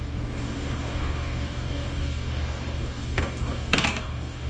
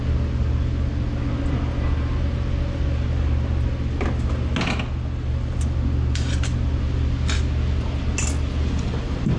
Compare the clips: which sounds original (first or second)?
second